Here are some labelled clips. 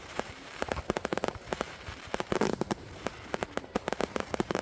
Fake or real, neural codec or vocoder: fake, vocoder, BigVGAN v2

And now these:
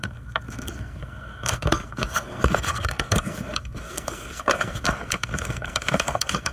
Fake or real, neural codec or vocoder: fake, codec, SNAC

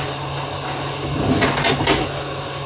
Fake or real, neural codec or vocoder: real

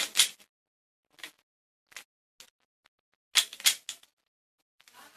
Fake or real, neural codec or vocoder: real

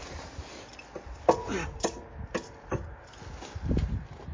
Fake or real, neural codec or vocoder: real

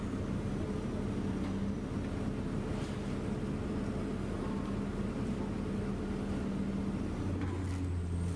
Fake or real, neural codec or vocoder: real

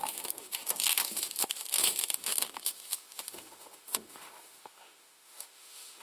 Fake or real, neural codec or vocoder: fake, autoencoder, DAC-VAE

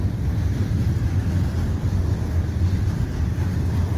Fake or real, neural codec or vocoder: fake, vocoder, BigVGAN v2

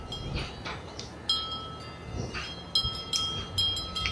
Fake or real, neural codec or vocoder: real